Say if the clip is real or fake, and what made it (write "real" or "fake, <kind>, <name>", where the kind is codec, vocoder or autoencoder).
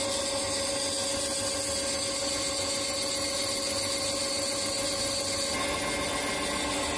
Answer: real